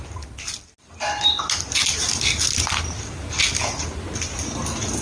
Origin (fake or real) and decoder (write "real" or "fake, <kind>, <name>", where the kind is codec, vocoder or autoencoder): real